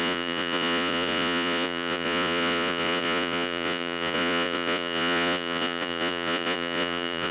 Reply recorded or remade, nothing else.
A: remade